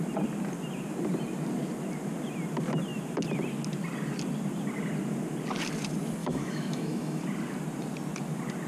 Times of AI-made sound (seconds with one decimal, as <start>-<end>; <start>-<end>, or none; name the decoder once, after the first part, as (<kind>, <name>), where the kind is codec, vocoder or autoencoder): 6.2-7.2 (autoencoder, DAC-VAE)